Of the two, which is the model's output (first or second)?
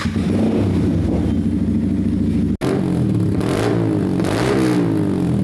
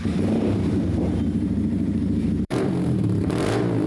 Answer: second